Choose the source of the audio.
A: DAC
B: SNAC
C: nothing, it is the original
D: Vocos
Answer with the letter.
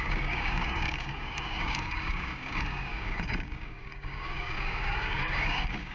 A